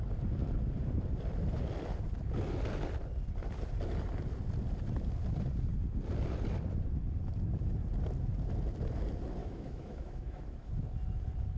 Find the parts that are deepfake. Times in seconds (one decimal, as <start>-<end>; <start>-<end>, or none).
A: 9.4-10.7